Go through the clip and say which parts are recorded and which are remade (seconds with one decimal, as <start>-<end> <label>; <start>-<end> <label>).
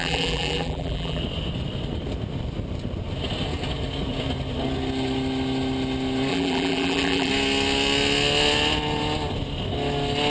0.0-1.2 remade; 1.2-6.3 recorded; 6.3-7.3 remade; 7.3-10.3 recorded